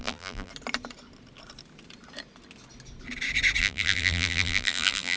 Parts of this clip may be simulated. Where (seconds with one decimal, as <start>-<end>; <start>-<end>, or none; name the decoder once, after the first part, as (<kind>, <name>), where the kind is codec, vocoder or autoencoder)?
0.0-0.5 (vocoder, BigVGAN v2); 3.6-5.2